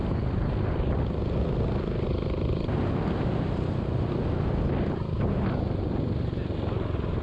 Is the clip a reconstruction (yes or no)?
no